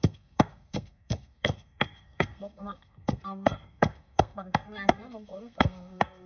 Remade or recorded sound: remade